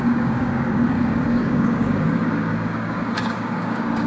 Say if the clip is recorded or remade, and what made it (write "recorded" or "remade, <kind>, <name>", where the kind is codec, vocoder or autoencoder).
remade, codec, DAC